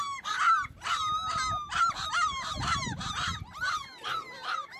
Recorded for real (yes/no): no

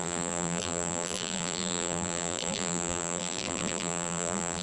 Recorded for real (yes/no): no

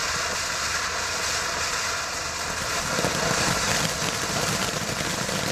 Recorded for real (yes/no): yes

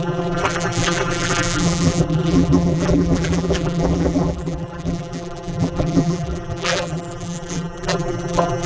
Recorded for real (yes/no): no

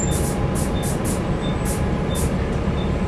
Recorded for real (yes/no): yes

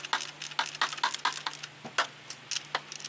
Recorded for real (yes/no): yes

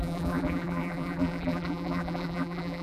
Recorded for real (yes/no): no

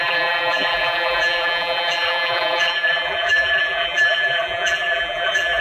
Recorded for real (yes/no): no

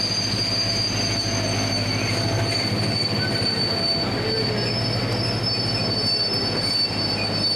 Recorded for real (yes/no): yes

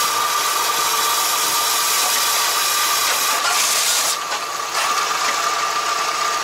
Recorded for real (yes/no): yes